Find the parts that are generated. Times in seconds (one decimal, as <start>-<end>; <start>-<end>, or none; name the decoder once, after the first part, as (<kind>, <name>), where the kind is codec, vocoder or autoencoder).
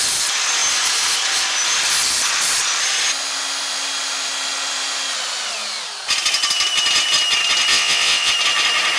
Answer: 7.7-8.3 (vocoder, WaveNeXt)